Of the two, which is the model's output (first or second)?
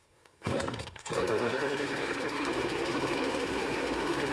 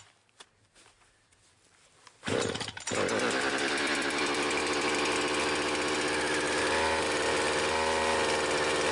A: first